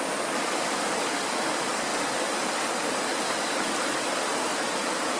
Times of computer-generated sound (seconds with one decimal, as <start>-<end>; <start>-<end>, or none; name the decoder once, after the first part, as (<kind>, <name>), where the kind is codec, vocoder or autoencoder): none